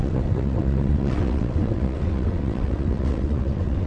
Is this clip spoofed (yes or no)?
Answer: yes